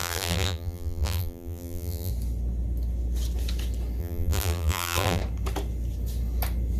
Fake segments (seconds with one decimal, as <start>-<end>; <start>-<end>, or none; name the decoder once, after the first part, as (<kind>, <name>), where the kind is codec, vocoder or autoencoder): 0.0-2.1 (vocoder, BigVGAN v2); 4.0-5.2